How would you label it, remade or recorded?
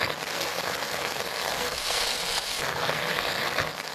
remade